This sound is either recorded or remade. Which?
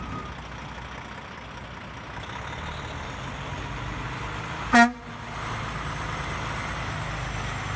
recorded